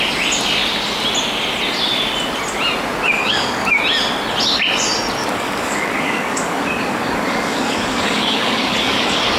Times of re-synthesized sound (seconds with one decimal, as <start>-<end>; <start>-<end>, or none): 3.2-3.8; 5.2-9.4